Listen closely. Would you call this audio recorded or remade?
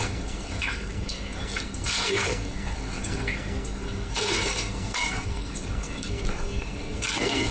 remade